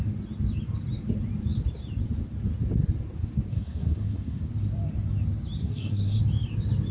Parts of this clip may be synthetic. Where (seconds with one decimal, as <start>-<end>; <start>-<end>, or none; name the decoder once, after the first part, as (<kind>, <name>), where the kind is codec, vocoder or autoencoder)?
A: 3.5-4.4 (codec, SNAC); 5.6-6.2